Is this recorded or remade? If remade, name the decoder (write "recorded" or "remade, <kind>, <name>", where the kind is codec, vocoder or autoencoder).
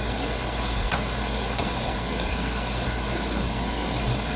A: remade, codec, SNAC